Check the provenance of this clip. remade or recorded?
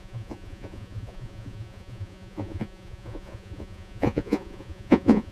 remade